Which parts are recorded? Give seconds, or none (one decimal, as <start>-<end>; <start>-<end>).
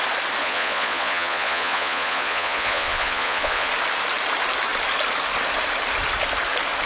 0.0-0.4; 3.7-6.9